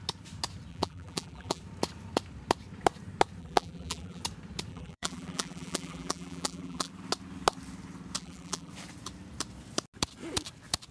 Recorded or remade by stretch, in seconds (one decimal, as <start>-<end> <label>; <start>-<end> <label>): 0.0-0.7 recorded; 0.7-1.6 remade; 1.6-3.4 recorded; 3.4-4.2 remade; 4.2-4.7 recorded; 4.7-6.9 remade; 6.9-8.2 recorded; 8.2-8.7 remade; 8.7-10.9 recorded